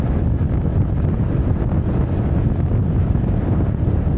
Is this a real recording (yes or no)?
yes